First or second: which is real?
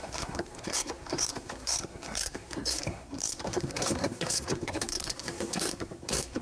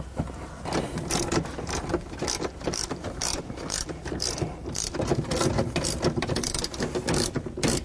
second